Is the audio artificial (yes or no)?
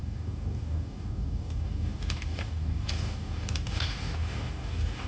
yes